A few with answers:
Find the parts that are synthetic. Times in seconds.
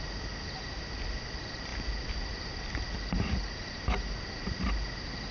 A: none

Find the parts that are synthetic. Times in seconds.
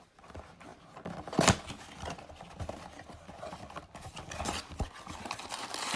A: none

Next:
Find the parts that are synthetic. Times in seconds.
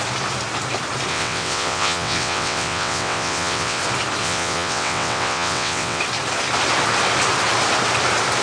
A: 1.1-3.8; 4.2-6.0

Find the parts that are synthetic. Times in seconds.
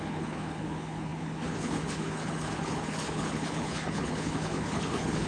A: 0.0-5.3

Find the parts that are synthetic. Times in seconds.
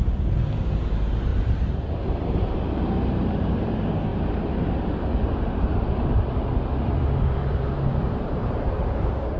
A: 0.0-5.1; 7.3-9.4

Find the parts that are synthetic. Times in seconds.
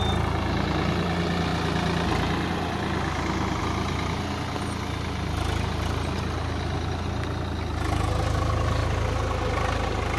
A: none